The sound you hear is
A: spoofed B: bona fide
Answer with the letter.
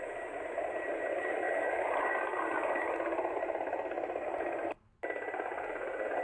B